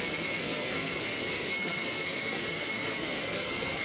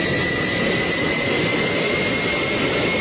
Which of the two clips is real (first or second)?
second